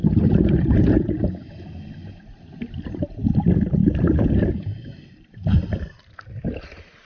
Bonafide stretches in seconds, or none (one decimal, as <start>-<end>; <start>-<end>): 0.8-3.8; 4.3-7.0